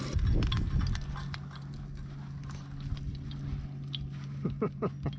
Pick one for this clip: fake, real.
real